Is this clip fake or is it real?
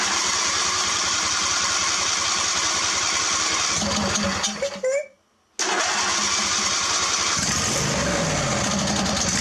real